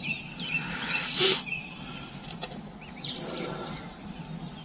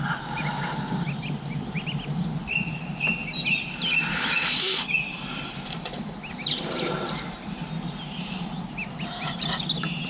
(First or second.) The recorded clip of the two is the second